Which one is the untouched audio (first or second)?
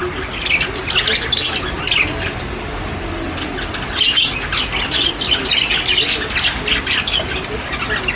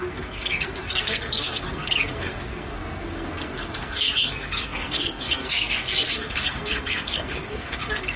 first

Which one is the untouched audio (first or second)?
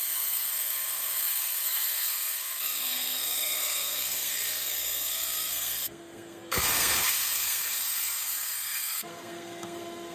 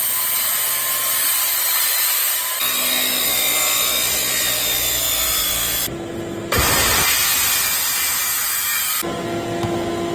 second